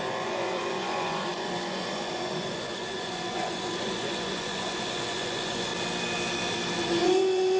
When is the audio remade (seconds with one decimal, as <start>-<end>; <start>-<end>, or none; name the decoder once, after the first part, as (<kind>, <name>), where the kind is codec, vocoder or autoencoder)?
0.0-5.7 (vocoder, Vocos); 7.0-7.6